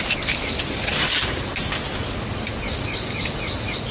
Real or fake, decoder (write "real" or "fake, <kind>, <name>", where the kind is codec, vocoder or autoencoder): real